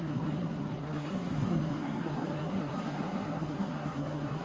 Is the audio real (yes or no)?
no